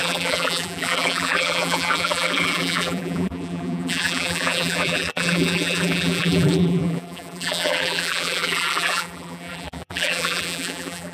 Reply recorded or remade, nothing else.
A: remade